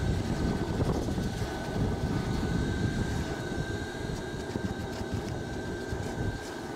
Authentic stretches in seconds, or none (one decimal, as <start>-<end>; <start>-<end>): 4.1-6.8